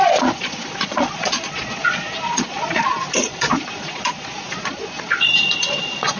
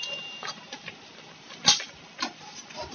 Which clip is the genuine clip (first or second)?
second